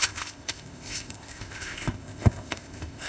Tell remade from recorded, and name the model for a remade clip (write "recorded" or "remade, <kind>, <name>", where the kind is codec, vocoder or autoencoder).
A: remade, codec, ZipCodec